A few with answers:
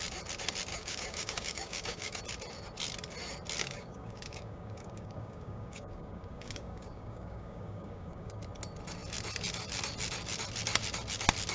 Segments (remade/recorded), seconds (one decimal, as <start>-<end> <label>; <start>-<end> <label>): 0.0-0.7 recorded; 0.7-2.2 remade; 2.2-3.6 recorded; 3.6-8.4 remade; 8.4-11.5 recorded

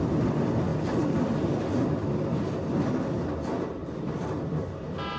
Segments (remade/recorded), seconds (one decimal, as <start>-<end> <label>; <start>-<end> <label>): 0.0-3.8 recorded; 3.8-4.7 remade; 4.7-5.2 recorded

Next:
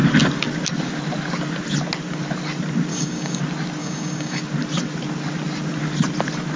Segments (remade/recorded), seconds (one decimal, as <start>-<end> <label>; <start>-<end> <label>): 0.0-2.9 recorded; 2.9-3.4 remade; 3.4-3.8 recorded; 3.8-4.4 remade; 4.4-6.6 recorded

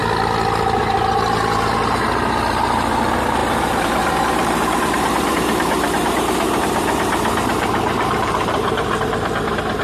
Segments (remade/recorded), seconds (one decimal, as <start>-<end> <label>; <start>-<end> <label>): 0.0-0.8 recorded; 0.8-9.8 remade

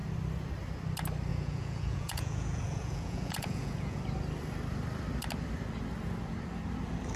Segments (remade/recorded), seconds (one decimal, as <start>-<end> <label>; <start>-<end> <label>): 0.0-1.3 recorded; 1.3-4.0 remade; 4.0-7.2 recorded

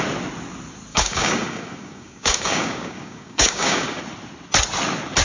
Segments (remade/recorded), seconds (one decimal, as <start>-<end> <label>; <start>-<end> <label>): 0.0-0.9 recorded; 0.9-4.0 remade; 4.0-5.2 recorded